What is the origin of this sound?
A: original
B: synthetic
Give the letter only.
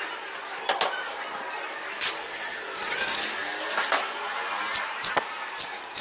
A